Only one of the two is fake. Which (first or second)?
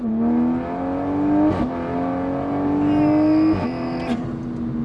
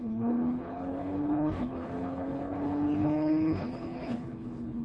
second